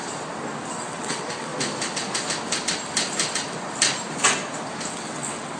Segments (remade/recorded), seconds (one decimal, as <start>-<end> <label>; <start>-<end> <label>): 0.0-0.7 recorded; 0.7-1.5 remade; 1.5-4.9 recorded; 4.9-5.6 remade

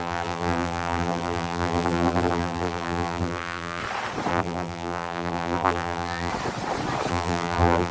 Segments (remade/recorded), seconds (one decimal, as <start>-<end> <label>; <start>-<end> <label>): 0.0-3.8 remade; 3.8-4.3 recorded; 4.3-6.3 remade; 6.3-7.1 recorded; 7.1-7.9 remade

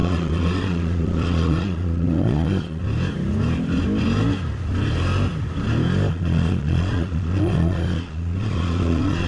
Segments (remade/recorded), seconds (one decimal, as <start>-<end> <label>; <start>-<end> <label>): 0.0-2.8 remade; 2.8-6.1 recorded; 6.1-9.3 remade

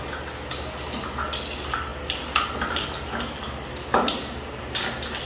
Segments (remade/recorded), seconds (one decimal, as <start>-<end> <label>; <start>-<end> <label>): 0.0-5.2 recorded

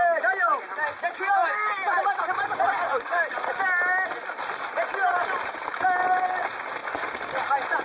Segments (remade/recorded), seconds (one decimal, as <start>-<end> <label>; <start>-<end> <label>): 0.0-7.8 recorded

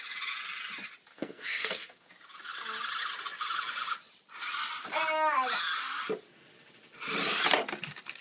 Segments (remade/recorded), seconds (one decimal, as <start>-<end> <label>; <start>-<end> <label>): 0.0-1.1 recorded; 1.1-2.1 remade; 2.1-8.2 recorded

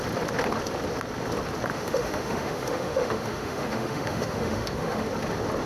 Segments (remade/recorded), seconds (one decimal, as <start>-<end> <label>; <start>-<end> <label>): 0.0-1.7 recorded; 1.7-5.1 remade; 5.1-5.7 recorded

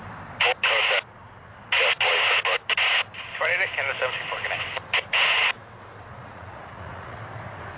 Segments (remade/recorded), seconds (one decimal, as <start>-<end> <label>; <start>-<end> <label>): 0.0-6.1 recorded; 6.1-7.2 remade; 7.2-7.8 recorded